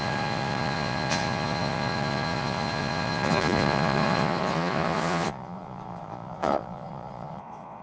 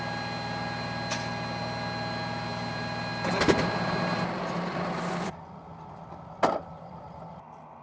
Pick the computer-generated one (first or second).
first